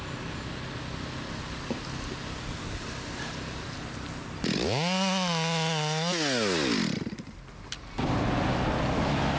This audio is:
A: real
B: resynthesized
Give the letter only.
A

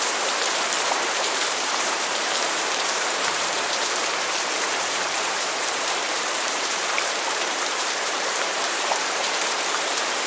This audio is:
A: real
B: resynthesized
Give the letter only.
B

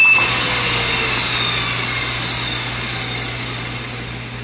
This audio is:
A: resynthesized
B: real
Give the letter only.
B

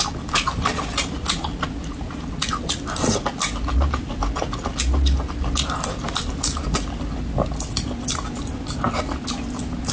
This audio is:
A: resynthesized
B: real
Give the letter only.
B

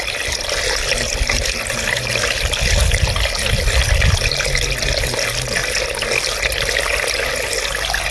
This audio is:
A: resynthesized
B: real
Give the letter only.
B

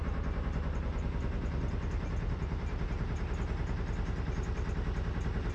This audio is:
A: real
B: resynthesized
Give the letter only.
A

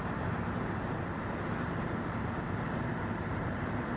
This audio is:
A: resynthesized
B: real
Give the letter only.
A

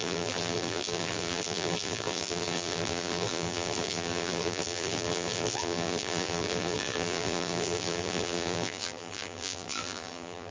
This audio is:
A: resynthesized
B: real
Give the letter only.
A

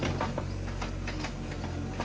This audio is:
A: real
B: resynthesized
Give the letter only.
A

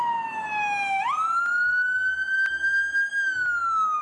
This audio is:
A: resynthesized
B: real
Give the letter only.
B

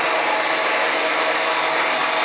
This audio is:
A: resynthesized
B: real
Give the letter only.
B